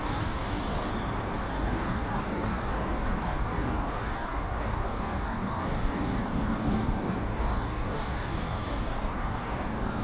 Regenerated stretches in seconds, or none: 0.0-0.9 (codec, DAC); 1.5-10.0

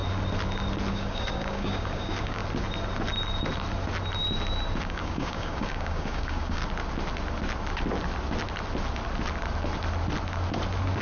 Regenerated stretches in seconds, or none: 0.9-2.4 (codec, DAC); 4.8-6.6

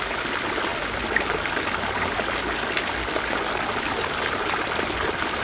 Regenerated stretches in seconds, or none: none

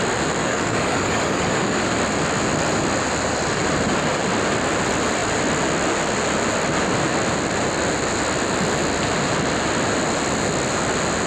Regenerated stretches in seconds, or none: 0.4-1.9 (codec, DAC)

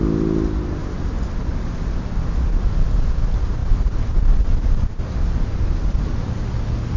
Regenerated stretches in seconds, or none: none